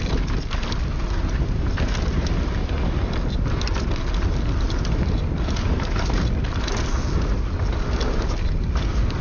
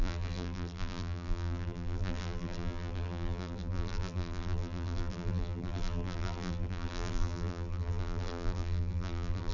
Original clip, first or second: first